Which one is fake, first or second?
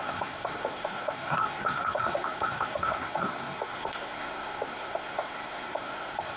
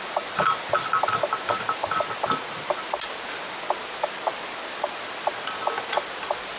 first